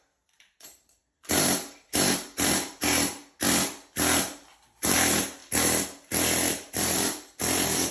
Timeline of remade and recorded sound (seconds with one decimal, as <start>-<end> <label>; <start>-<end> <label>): 0.0-3.2 remade; 3.2-4.2 recorded; 4.2-5.4 remade; 5.4-6.5 recorded; 6.5-7.9 remade